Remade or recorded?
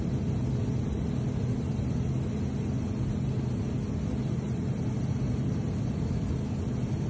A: recorded